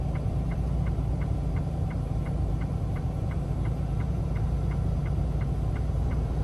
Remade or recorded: remade